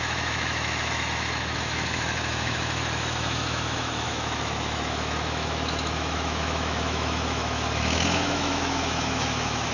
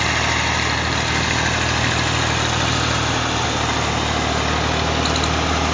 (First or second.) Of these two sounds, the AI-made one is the first